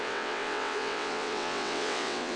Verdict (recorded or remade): remade